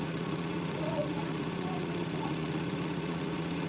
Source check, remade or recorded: remade